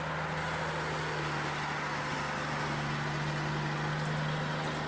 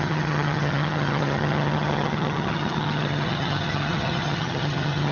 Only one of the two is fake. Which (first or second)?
second